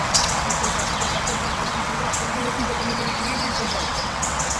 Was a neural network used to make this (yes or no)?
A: yes